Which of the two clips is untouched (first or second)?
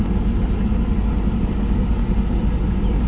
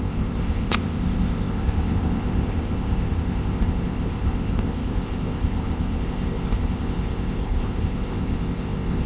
first